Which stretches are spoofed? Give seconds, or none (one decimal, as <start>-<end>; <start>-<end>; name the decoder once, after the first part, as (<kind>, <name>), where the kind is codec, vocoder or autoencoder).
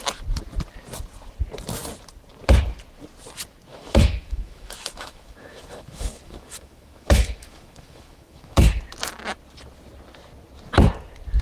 3.7-8.8 (autoencoder, DAC-VAE)